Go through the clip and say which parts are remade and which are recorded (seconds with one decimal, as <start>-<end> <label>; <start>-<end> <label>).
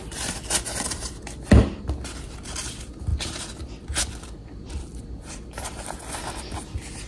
0.0-7.1 recorded